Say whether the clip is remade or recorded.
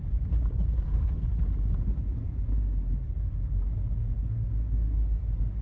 remade